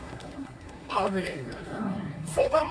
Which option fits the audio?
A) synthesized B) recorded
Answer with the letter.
A